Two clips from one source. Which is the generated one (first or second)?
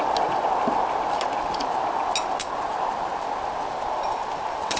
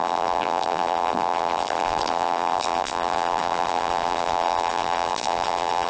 second